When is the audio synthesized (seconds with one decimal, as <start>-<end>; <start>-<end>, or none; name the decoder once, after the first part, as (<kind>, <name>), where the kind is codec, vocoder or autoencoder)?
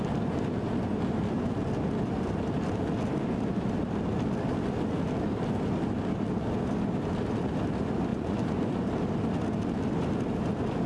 8.1-8.9 (vocoder, Vocos)